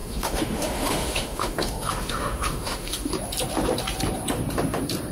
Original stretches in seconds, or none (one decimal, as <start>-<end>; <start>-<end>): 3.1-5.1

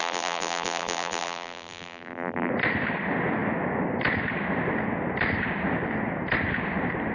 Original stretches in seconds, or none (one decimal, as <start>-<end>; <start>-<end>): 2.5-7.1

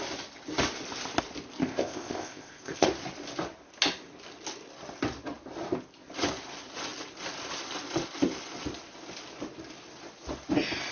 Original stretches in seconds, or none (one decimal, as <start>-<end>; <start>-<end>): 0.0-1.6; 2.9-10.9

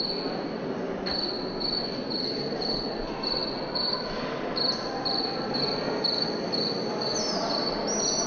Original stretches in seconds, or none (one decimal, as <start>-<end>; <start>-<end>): 0.0-8.3